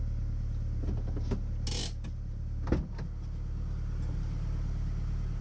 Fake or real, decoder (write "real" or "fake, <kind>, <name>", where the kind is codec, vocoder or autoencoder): real